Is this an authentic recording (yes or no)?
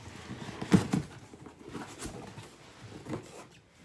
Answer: yes